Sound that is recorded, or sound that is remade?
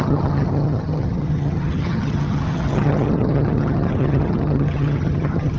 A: remade